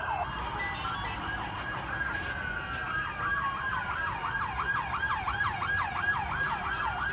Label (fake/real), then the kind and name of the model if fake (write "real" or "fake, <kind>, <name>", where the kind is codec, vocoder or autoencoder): real